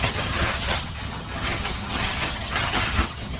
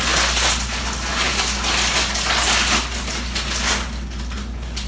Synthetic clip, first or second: first